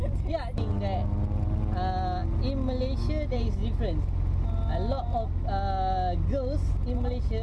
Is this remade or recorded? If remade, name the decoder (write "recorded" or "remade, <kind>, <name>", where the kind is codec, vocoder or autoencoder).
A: recorded